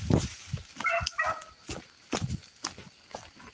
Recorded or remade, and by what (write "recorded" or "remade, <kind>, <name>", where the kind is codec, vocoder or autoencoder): recorded